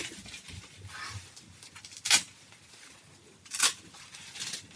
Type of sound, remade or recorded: recorded